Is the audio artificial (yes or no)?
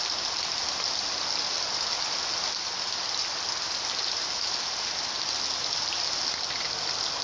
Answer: no